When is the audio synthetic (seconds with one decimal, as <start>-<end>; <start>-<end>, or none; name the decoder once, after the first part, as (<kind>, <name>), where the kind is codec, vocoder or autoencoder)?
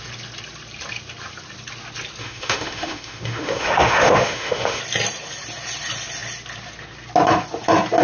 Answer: 2.2-4.8 (autoencoder, DAC-VAE)